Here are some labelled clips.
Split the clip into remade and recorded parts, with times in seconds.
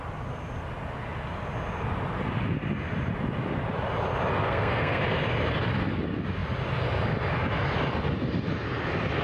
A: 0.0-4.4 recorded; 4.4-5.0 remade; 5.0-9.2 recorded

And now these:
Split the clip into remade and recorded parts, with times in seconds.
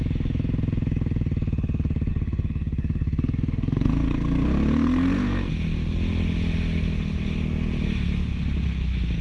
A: 0.0-2.1 recorded; 2.1-5.5 remade; 5.5-9.2 recorded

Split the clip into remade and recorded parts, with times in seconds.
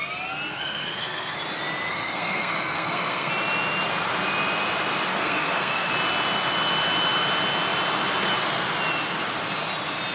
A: 0.0-0.5 recorded; 0.5-1.4 remade; 1.4-1.9 recorded; 1.9-3.3 remade; 3.3-5.1 recorded; 5.1-5.9 remade; 5.9-10.1 recorded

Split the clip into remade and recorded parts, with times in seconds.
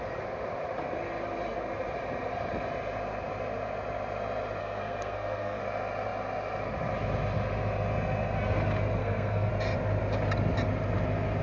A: 0.0-4.6 recorded; 4.6-5.6 remade; 5.6-9.0 recorded; 9.0-9.5 remade; 9.5-11.4 recorded